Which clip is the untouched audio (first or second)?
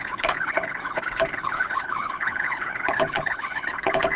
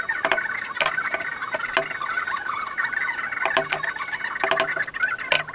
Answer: second